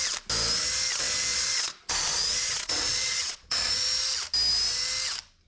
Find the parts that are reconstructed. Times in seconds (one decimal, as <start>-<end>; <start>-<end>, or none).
1.3-3.7